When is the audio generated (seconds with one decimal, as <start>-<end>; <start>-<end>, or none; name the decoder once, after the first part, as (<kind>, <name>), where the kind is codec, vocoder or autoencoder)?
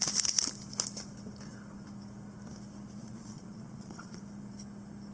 3.0-4.2 (vocoder, Vocos)